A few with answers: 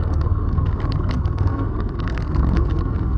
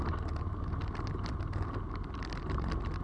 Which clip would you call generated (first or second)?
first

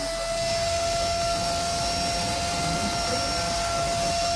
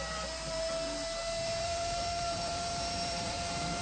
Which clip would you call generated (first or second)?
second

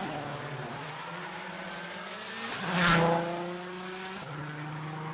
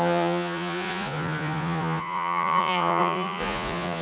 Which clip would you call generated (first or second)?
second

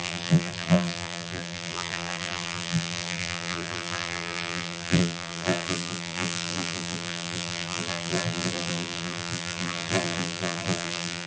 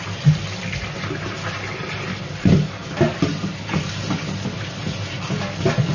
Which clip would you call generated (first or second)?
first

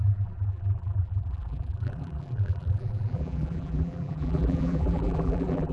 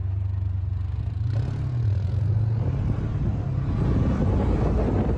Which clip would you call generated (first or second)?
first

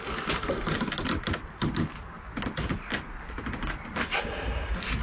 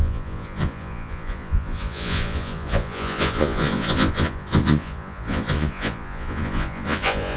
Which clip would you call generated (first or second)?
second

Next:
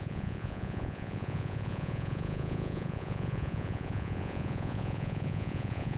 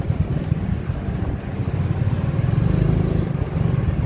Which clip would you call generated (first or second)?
first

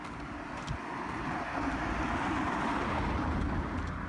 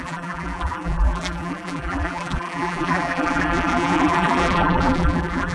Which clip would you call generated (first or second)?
second